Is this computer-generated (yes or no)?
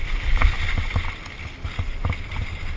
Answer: no